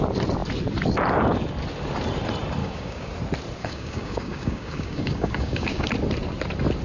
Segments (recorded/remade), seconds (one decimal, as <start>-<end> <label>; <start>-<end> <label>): 0.0-2.6 recorded; 2.6-3.1 remade; 3.1-3.6 recorded; 3.6-5.9 remade; 5.9-6.8 recorded